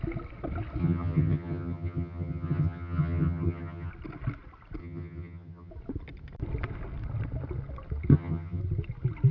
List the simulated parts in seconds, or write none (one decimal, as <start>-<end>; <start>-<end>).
0.8-3.9; 4.8-5.7; 8.1-8.6

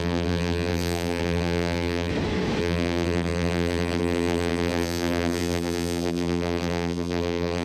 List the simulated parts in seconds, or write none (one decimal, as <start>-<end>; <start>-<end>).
0.0-2.1; 2.6-7.6

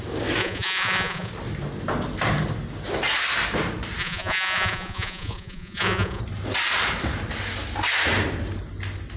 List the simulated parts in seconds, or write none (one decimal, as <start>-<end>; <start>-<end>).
0.4-1.3; 4.0-6.2

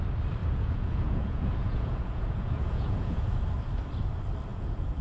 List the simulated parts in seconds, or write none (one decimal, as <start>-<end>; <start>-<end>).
0.4-3.4; 4.5-5.0